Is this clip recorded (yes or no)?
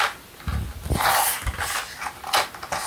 yes